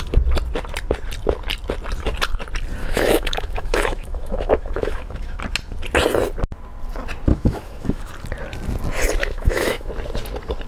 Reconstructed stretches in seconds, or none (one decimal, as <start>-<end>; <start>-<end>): 2.8-5.4; 7.3-8.0; 9.2-9.9